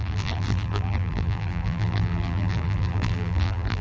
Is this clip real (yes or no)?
no